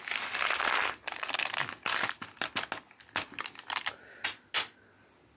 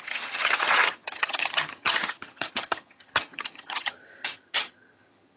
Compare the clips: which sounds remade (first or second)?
second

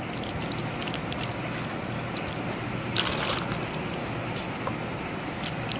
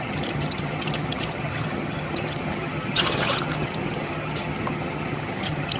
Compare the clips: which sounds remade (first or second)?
second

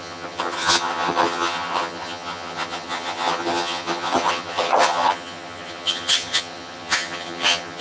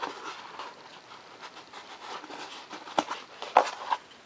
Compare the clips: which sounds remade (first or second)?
first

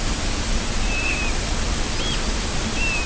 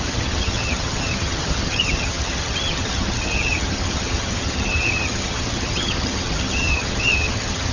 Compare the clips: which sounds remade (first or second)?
second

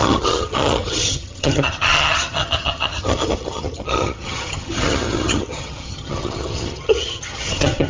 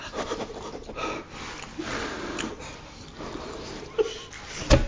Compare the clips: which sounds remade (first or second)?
first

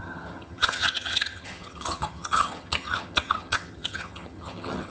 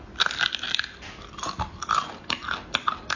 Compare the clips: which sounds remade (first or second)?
first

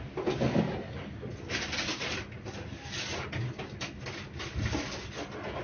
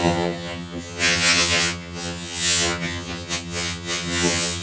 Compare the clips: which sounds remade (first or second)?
second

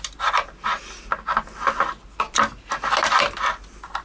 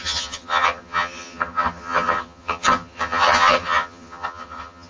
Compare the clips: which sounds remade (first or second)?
second